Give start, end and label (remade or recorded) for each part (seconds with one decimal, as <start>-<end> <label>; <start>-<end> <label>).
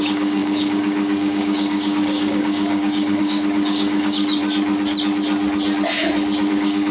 0.0-4.4 remade; 4.4-6.5 recorded; 6.5-6.9 remade